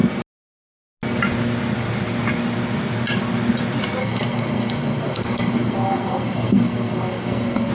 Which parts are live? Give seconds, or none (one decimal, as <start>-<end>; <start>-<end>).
0.0-4.0